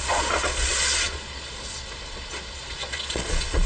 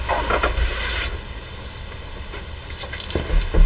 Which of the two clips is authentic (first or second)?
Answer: second